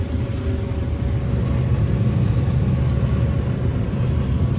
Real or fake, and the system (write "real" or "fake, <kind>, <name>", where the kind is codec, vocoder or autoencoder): real